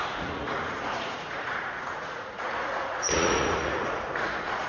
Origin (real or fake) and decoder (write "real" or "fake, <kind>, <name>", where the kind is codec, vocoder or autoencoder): fake, vocoder, Vocos